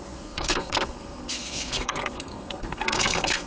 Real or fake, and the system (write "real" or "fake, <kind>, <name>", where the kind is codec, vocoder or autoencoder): fake, codec, SNAC